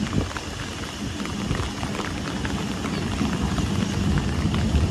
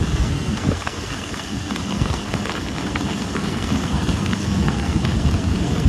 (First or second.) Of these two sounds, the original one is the first